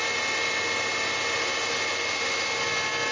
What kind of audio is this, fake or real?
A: real